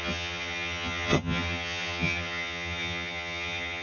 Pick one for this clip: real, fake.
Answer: fake